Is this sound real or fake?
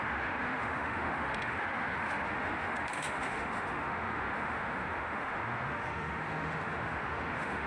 fake